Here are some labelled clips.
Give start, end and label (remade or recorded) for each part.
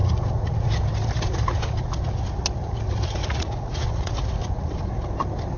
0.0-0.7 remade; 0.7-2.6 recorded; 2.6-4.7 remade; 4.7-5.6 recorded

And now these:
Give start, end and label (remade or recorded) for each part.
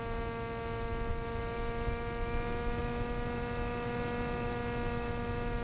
0.0-5.6 recorded